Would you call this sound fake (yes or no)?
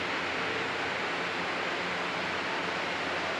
no